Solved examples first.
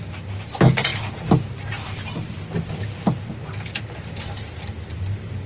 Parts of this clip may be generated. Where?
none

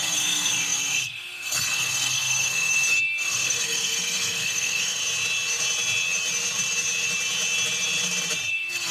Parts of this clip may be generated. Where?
0.0-5.0 (codec, SNAC); 8.5-8.9

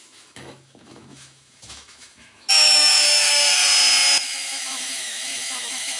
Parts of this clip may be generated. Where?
0.0-3.6 (autoencoder, DAC-VAE); 4.2-6.0

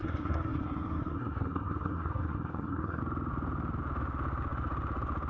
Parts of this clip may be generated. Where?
0.0-3.0 (codec, SNAC)

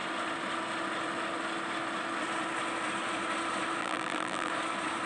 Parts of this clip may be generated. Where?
3.8-4.5 (vocoder, BigVGAN v2)

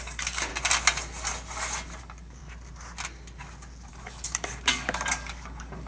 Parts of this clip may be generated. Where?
0.0-0.5 (codec, DAC); 2.0-2.4; 3.9-5.9

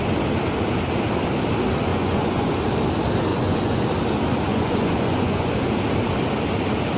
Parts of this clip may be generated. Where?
1.9-2.5 (vocoder, Vocos); 3.3-3.8; 4.5-5.5

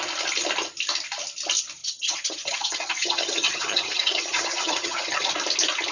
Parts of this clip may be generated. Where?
1.8-5.3 (vocoder, HiFi-GAN)